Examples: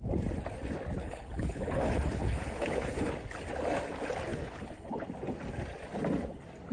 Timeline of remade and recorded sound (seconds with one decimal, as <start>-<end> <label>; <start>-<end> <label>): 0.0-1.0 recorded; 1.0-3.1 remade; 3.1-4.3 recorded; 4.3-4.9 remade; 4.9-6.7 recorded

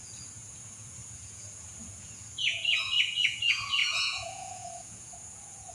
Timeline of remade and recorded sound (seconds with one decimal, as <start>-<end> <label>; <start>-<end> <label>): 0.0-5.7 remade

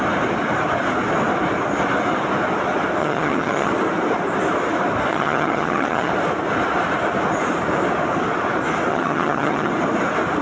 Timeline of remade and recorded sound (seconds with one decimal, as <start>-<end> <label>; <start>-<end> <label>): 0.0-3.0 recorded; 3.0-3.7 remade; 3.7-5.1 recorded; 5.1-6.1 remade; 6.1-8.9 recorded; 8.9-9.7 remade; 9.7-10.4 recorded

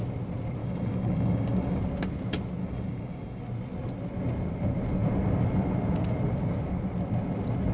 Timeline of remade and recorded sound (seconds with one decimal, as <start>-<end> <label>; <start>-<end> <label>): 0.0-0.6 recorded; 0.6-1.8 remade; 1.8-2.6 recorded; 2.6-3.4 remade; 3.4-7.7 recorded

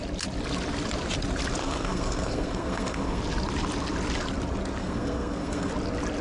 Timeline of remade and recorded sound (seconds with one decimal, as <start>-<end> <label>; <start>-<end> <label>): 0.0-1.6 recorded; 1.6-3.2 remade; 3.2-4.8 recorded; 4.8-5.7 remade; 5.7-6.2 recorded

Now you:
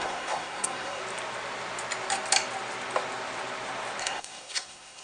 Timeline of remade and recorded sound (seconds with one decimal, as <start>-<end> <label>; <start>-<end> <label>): 0.0-1.0 remade; 1.0-4.0 recorded; 4.0-5.0 remade

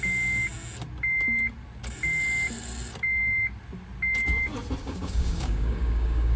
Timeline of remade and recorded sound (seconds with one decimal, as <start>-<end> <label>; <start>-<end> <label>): 0.0-4.8 recorded; 4.8-6.4 remade